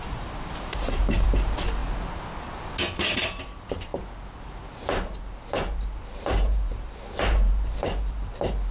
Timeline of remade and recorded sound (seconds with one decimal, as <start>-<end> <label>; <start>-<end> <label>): 0.0-1.8 remade; 1.8-3.2 recorded; 3.2-3.9 remade; 3.9-5.4 recorded; 5.4-8.7 remade